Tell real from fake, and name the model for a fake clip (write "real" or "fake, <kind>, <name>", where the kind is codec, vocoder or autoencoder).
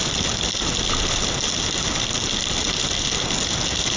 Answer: real